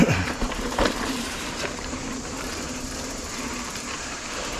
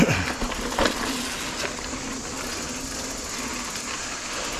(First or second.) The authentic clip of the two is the second